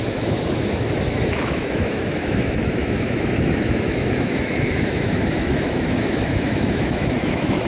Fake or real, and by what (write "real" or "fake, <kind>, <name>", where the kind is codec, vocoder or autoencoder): fake, autoencoder, DAC-VAE